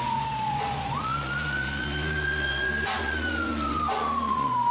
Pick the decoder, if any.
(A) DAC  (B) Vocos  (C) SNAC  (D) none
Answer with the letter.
B